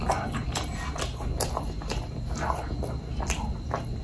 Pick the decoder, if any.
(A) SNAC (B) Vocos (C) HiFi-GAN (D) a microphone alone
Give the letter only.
D